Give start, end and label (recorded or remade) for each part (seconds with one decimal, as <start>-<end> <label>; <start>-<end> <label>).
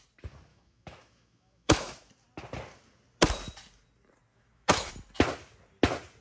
0.0-0.5 recorded; 0.5-2.1 remade; 2.1-4.3 recorded; 4.3-4.9 remade; 4.9-6.2 recorded